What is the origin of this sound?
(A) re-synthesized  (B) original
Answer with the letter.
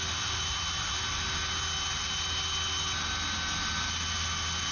B